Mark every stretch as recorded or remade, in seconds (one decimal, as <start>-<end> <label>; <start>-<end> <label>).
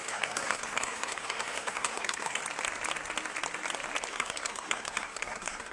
0.0-2.4 remade; 2.4-4.1 recorded; 4.1-5.7 remade